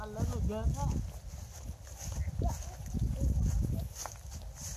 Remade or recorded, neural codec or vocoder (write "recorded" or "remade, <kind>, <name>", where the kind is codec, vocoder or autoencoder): recorded